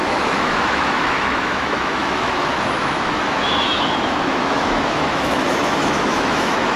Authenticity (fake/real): fake